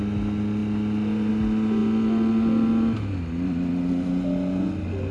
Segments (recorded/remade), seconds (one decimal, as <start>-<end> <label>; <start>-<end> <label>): 0.0-5.1 recorded